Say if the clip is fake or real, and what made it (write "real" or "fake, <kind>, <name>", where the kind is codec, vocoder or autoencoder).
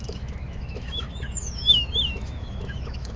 fake, autoencoder, DAC-VAE